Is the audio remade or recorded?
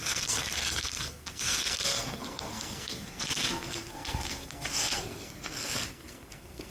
remade